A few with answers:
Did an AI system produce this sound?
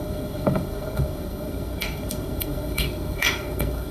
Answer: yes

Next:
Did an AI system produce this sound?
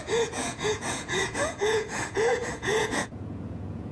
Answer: yes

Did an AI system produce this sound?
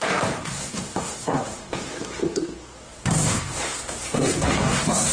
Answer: yes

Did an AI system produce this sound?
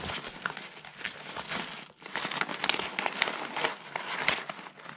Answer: no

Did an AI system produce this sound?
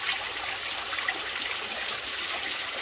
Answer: no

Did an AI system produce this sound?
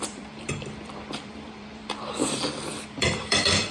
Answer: yes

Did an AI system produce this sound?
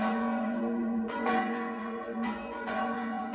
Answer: yes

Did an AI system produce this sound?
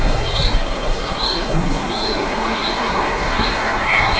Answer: yes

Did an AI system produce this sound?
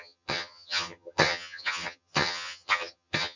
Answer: yes